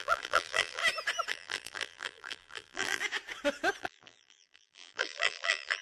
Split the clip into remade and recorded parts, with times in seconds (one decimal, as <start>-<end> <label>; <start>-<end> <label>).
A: 0.0-0.8 remade; 0.8-1.3 recorded; 1.3-3.0 remade; 3.0-3.8 recorded; 3.8-5.8 remade